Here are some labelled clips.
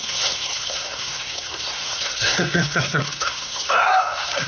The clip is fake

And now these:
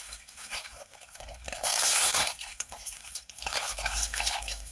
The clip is fake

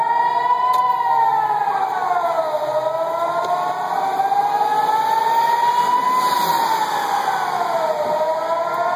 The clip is real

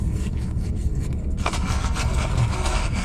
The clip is fake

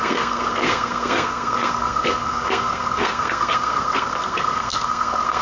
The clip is fake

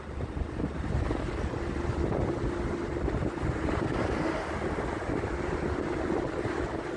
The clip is real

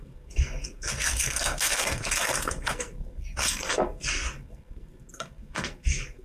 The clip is fake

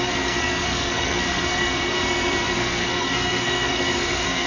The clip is fake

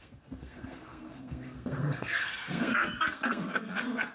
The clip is fake